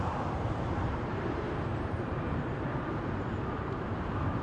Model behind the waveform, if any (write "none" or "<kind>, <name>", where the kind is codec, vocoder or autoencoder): vocoder, BigVGAN v2